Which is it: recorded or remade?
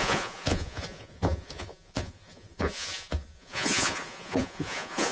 remade